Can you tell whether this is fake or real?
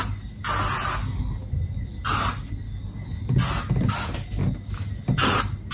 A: real